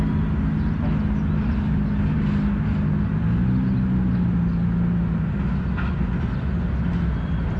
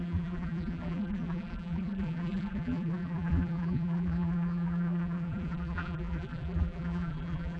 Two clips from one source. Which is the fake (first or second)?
second